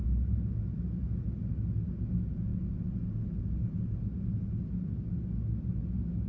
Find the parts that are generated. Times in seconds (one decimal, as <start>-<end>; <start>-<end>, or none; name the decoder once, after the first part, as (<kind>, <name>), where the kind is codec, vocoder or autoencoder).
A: none